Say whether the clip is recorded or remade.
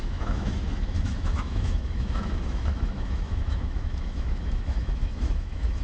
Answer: remade